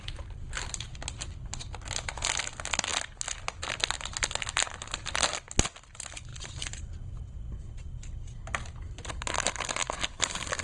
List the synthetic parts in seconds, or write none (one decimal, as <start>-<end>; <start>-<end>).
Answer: 6.3-7.4